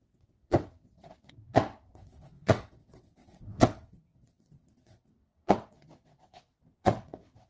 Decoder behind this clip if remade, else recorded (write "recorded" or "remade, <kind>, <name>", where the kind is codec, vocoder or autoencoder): remade, vocoder, WaveNeXt